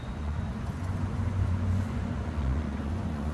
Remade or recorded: remade